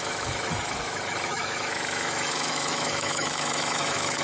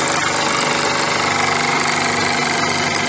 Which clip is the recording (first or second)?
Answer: second